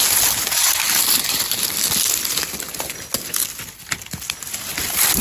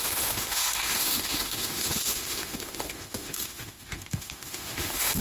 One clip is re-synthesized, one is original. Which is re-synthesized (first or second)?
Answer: second